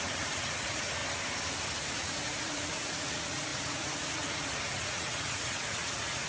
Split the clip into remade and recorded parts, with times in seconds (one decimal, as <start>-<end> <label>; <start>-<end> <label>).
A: 0.0-1.0 remade; 1.0-1.9 recorded; 1.9-6.3 remade